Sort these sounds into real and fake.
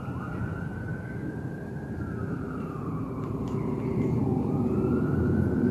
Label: fake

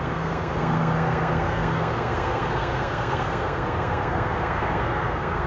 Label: fake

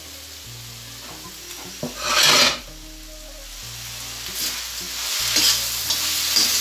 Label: real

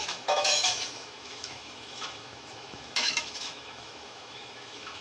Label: fake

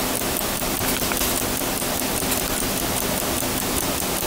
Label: real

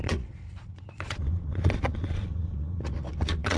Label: fake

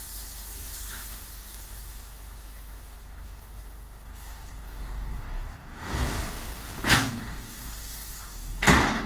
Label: fake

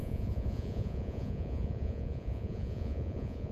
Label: fake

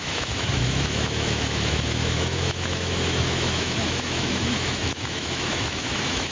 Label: fake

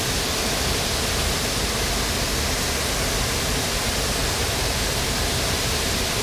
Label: real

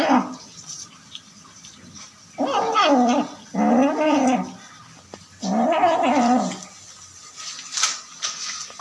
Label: real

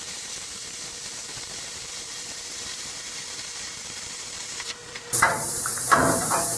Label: fake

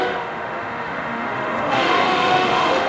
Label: fake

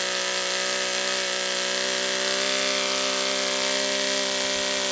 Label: real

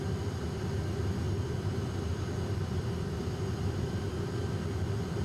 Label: real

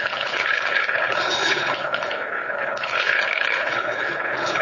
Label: fake